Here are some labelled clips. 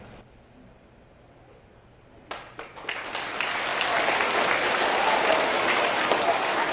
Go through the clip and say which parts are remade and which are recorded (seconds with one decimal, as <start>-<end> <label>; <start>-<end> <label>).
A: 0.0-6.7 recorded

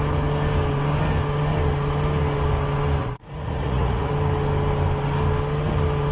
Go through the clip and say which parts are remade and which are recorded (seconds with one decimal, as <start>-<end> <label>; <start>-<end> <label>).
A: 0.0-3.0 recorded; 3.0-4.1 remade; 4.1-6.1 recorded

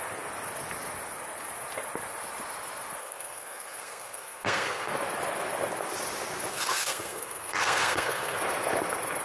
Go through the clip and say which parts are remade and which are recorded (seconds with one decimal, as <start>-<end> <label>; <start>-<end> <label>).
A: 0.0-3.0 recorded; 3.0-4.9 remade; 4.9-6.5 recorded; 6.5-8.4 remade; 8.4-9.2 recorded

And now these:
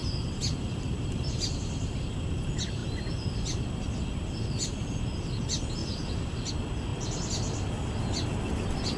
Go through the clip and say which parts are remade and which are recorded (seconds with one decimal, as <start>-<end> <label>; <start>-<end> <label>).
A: 0.0-1.7 remade; 1.7-5.8 recorded; 5.8-6.5 remade; 6.5-9.0 recorded